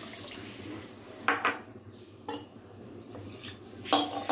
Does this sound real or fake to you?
real